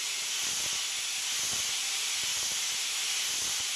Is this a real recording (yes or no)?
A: yes